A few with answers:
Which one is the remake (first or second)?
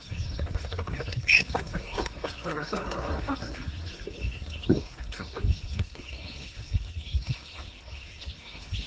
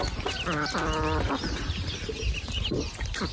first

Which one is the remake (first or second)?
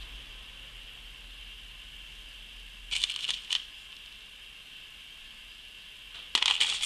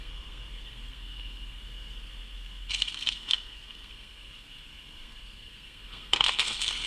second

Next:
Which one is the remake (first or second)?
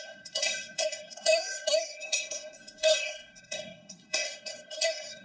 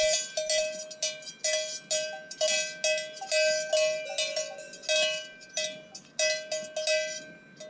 first